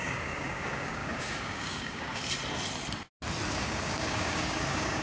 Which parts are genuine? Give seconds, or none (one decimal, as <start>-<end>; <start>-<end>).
2.2-3.5